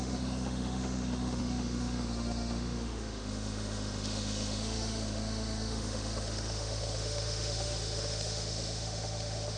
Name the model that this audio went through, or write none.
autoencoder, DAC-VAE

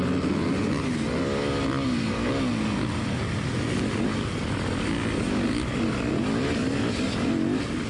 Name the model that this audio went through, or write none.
none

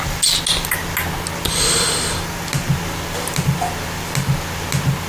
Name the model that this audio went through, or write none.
none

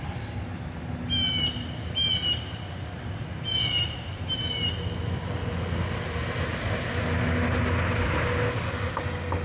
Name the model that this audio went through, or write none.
none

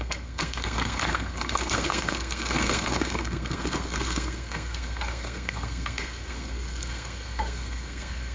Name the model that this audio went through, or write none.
codec, SNAC